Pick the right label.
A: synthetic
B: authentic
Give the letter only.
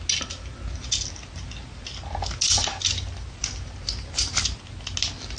B